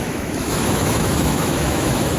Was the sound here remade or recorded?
remade